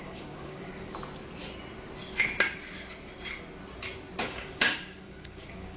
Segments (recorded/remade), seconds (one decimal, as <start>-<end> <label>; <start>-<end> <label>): 0.0-0.7 remade; 0.7-4.2 recorded; 4.2-5.8 remade